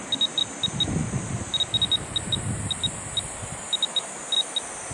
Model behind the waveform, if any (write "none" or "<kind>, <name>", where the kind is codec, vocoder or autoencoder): none